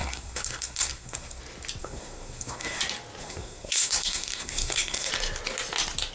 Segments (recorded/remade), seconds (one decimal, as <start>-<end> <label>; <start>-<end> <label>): 0.0-1.4 remade; 1.4-1.8 recorded; 1.8-2.8 remade; 2.8-3.2 recorded; 3.2-5.1 remade; 5.1-6.1 recorded